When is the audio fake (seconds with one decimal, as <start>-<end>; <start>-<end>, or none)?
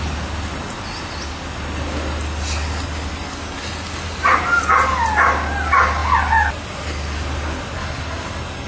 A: none